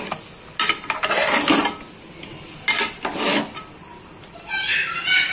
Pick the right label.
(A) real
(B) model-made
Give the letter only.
A